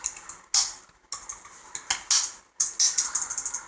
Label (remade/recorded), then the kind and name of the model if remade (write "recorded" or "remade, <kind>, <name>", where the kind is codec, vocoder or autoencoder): recorded